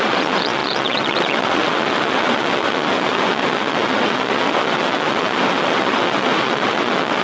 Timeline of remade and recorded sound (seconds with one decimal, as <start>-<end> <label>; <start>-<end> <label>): 0.0-7.2 remade